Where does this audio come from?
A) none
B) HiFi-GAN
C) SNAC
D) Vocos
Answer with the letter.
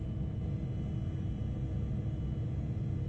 A